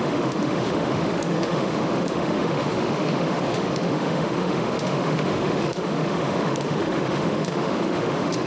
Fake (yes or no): yes